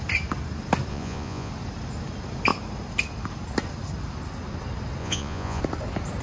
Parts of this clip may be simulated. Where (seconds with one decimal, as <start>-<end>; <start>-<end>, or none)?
0.9-1.5; 5.0-5.6